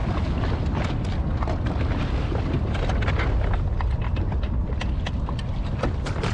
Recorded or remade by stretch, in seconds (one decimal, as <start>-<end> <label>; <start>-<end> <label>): 0.0-6.3 recorded